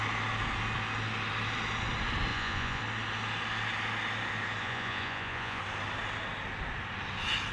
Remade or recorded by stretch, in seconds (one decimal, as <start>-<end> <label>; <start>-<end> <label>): 0.0-2.3 recorded; 2.3-2.8 remade; 2.8-4.6 recorded; 4.6-5.6 remade; 5.6-7.5 recorded